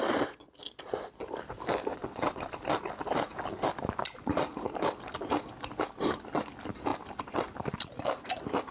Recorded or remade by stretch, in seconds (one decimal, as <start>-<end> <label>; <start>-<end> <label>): 0.0-1.9 recorded; 1.9-2.5 remade; 2.5-8.7 recorded